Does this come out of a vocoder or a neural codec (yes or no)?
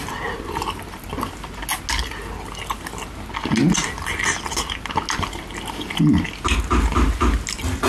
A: no